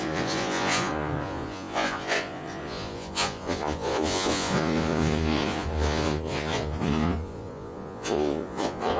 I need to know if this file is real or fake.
fake